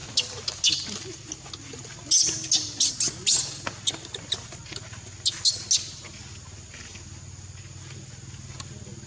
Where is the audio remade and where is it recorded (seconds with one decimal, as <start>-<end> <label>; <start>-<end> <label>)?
0.0-9.1 recorded